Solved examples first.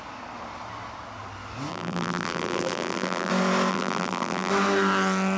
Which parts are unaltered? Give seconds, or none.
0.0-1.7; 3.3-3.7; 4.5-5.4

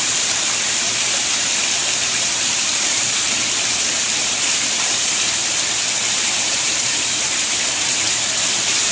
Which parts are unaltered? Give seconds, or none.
5.4-6.1

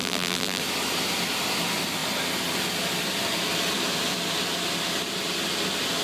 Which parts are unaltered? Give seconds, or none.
0.6-6.0

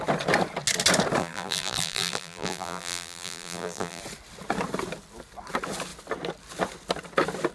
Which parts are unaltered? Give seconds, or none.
0.0-1.2; 4.0-7.5

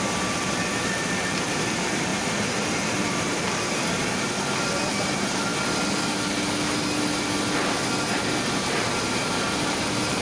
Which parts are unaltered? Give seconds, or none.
2.1-2.7; 4.0-4.9; 5.5-9.0